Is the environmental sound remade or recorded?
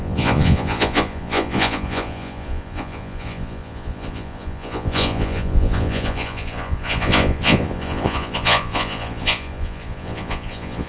remade